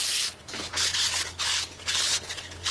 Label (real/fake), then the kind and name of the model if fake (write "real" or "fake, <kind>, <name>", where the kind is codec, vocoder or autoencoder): fake, codec, HILCodec